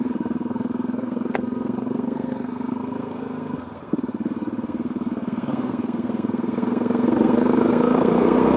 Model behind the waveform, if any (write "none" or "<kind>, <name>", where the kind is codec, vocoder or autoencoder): codec, SNAC